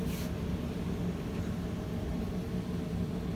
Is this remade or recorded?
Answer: recorded